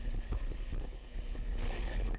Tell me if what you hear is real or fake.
fake